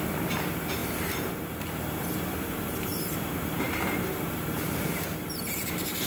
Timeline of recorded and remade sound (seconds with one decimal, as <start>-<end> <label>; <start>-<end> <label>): 0.0-6.1 remade